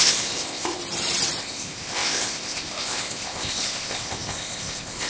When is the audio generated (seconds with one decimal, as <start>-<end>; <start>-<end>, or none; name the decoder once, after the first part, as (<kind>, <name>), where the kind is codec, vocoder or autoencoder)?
0.0-0.8 (codec, ZipCodec); 1.4-5.1